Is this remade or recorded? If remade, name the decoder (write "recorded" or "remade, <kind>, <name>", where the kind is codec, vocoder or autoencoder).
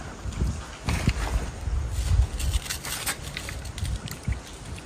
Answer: recorded